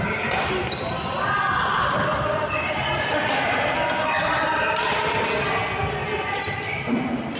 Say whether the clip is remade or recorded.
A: recorded